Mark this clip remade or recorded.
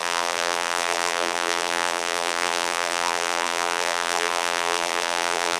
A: remade